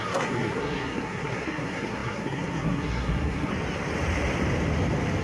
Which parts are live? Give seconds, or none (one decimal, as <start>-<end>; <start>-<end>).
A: 3.5-5.2